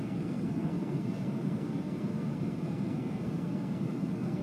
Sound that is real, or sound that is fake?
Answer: fake